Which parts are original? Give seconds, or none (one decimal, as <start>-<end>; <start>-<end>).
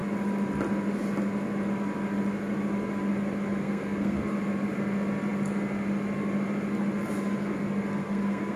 0.0-3.6; 4.2-8.0